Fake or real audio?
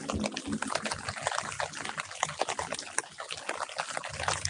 real